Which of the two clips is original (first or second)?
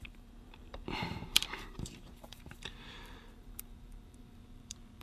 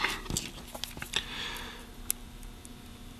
second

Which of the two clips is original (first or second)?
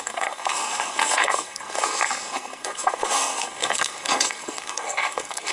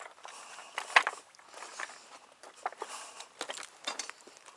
second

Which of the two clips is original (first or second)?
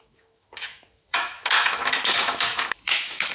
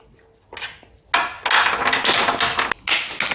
second